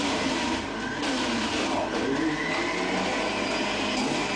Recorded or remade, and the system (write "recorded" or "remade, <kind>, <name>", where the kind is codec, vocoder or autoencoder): recorded